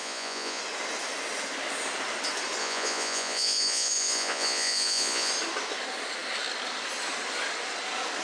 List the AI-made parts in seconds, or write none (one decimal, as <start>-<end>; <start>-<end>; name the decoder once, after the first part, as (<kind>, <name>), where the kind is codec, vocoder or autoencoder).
0.0-0.6 (vocoder, Vocos); 2.6-5.3